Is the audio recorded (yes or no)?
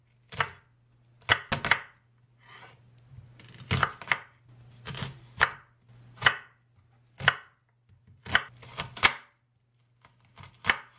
yes